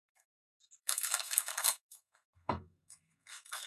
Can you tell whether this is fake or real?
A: fake